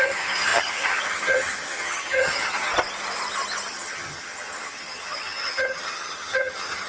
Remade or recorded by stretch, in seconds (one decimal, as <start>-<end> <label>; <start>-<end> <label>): 0.0-2.7 remade; 2.7-3.7 recorded; 3.7-6.9 remade